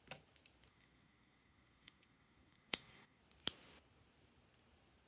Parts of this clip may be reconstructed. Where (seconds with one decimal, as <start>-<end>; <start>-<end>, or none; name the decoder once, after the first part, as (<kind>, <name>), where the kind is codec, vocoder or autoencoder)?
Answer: 0.7-3.2 (codec, SNAC)